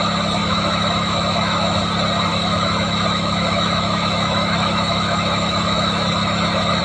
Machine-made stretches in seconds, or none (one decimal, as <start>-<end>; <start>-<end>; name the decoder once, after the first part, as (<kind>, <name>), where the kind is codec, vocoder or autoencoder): 0.4-1.8 (autoencoder, DAC-VAE); 2.3-6.8